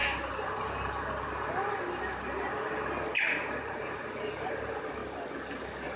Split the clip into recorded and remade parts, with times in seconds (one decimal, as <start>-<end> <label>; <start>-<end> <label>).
0.0-3.6 recorded; 3.6-5.0 remade; 5.0-6.0 recorded